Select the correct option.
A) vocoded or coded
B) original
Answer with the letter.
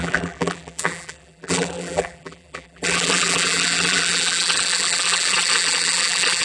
A